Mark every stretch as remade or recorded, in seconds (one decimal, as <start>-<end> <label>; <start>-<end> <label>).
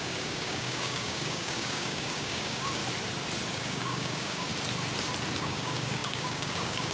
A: 0.0-2.8 remade; 2.8-3.5 recorded; 3.5-4.5 remade; 4.5-5.4 recorded; 5.4-6.9 remade